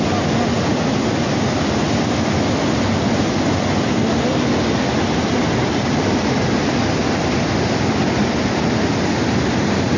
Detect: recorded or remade recorded